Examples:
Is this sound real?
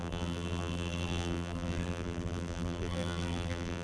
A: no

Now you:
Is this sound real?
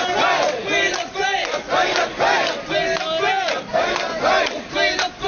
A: yes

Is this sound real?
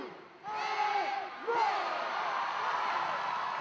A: yes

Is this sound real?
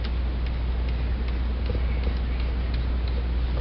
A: yes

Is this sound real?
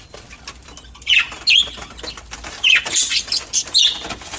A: yes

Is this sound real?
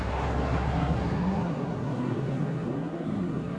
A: no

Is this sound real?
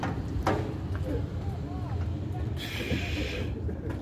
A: yes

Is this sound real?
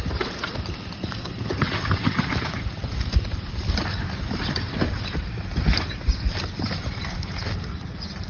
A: no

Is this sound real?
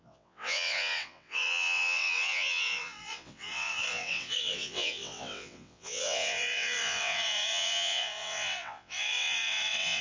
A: no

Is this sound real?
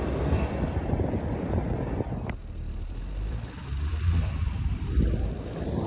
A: no